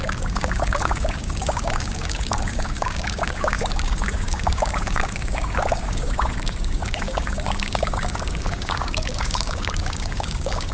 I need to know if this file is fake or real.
fake